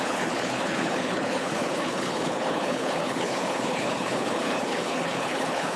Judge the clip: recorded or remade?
remade